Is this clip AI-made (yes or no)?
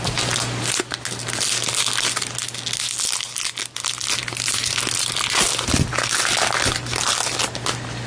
no